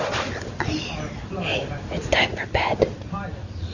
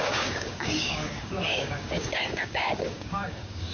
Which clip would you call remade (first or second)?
second